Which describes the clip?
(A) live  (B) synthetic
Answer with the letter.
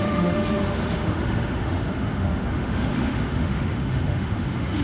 B